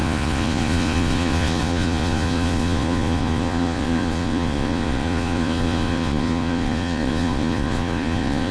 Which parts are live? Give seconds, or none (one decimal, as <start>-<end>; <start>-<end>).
none